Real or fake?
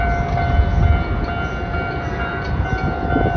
real